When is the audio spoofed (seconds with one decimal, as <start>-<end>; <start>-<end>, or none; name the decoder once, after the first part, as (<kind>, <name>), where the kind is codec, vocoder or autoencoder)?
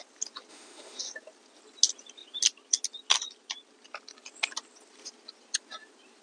0.5-1.0 (autoencoder, DAC-VAE)